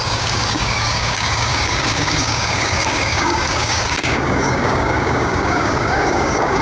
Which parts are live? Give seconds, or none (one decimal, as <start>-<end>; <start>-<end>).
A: none